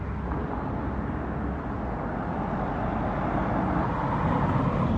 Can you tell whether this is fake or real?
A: real